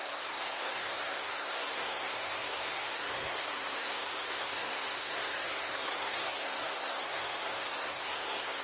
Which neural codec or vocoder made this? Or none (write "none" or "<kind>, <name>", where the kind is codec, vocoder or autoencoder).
codec, SNAC